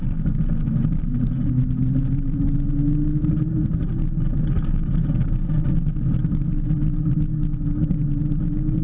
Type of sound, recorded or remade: recorded